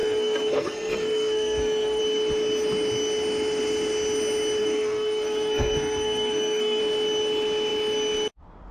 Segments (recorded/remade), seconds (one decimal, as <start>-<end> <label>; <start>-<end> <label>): 0.0-2.0 remade; 2.0-4.6 recorded; 4.6-6.8 remade; 6.8-8.7 recorded